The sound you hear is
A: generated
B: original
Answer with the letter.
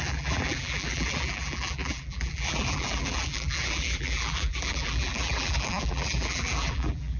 A